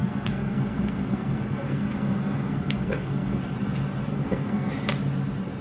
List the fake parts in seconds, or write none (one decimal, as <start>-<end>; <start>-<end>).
0.0-3.4; 4.1-4.7